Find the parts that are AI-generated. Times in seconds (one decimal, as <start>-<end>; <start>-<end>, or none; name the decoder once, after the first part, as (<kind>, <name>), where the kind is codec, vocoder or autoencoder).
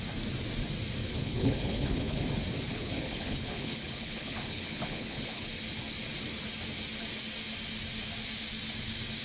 1.0-2.2 (codec, HILCodec); 2.7-5.5